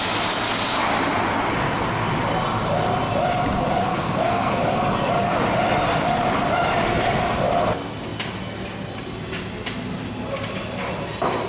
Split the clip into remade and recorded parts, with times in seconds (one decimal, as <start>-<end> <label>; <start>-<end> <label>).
0.0-3.8 recorded; 3.8-4.6 remade; 4.6-11.5 recorded

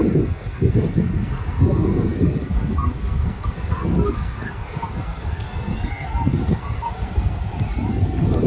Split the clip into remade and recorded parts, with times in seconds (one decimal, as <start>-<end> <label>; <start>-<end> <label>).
0.0-7.4 remade; 7.4-7.9 recorded; 7.9-8.5 remade